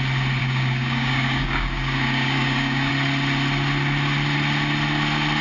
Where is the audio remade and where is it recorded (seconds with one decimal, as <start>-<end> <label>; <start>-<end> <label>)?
0.0-0.4 recorded; 0.4-2.9 remade; 2.9-5.4 recorded